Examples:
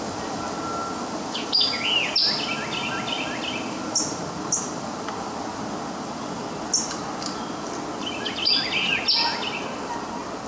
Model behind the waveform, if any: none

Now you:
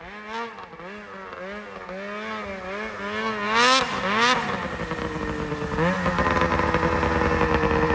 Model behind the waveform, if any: none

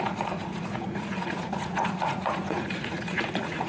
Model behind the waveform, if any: vocoder, Vocos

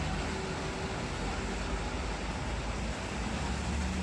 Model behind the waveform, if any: none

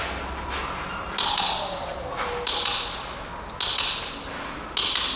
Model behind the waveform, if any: none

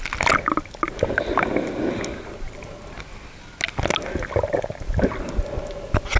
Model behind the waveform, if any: none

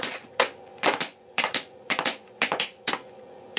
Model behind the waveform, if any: vocoder, Vocos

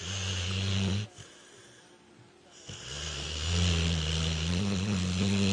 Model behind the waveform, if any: none